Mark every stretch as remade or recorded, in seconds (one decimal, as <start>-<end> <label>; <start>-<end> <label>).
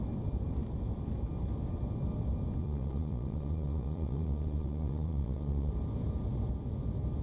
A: 0.0-2.6 recorded; 2.6-5.7 remade; 5.7-7.2 recorded